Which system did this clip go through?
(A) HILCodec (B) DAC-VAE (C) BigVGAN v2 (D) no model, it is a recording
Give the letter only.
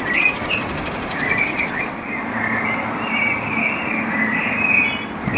C